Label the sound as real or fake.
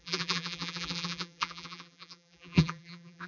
fake